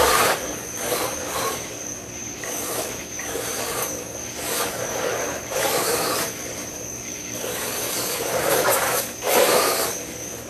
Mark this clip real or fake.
fake